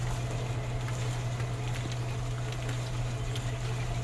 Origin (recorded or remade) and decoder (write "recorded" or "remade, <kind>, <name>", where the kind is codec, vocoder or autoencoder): recorded